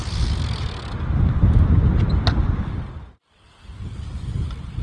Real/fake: real